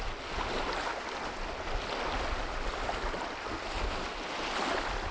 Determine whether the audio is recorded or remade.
recorded